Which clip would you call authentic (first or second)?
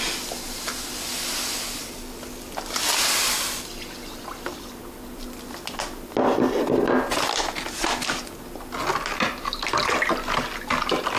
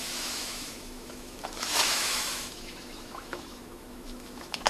first